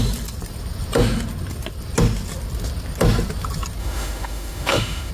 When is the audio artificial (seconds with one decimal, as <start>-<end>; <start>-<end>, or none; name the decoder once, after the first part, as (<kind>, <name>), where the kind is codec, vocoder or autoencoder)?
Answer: 3.8-5.1 (autoencoder, DAC-VAE)